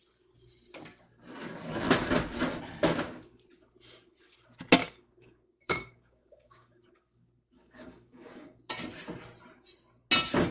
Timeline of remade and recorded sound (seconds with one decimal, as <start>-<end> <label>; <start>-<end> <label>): 0.0-4.8 recorded; 4.8-8.7 remade; 8.7-10.5 recorded